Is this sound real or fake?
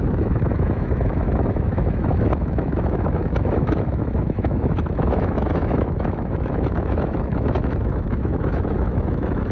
fake